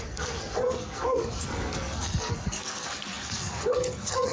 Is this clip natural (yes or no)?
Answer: no